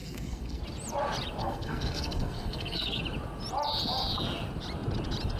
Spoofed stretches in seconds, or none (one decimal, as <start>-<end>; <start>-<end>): 0.0-0.6; 1.4-3.0